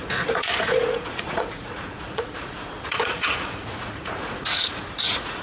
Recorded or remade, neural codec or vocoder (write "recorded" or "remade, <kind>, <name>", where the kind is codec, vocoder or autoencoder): remade, vocoder, Vocos